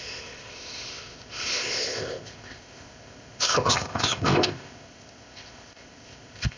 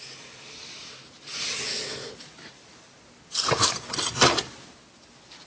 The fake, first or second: first